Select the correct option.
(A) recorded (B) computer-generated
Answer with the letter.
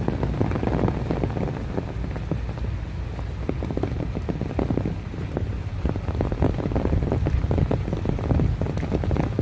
A